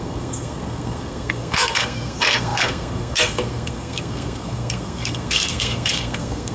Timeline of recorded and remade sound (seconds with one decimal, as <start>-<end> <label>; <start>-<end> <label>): 0.0-6.5 remade